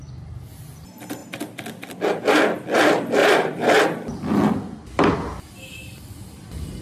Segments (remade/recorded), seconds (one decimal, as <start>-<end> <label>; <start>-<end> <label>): 0.0-3.2 recorded; 3.2-3.8 remade; 3.8-6.8 recorded